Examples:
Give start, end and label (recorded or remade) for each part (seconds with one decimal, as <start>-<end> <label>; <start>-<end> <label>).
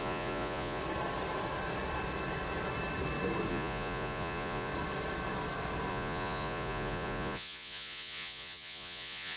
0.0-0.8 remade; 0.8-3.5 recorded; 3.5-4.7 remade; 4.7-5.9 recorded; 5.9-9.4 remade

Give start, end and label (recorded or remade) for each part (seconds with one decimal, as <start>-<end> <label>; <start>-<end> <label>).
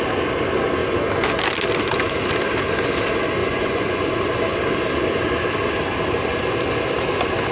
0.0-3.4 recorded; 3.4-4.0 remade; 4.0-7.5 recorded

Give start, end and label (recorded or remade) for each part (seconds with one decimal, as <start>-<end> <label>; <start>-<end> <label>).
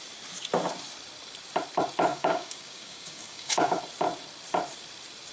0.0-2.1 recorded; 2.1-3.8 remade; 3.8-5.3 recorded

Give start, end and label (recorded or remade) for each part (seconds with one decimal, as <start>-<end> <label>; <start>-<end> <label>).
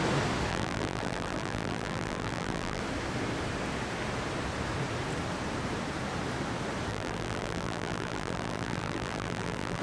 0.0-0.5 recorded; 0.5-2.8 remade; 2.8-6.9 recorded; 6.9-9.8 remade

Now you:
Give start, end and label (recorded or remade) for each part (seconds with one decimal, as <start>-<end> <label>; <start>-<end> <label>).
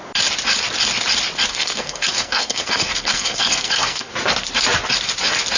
0.0-1.5 recorded; 1.5-4.1 remade; 4.1-5.6 recorded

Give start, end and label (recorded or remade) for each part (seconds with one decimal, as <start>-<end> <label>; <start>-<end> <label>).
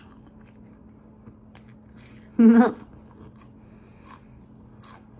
0.0-5.2 recorded